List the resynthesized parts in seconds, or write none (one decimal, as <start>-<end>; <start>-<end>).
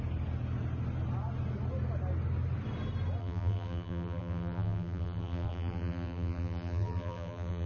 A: 3.2-7.7